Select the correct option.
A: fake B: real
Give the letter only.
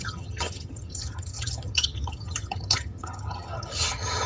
A